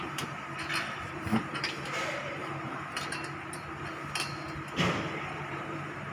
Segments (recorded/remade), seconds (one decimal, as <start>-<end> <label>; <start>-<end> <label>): 0.0-2.4 remade; 2.4-5.2 recorded; 5.2-6.1 remade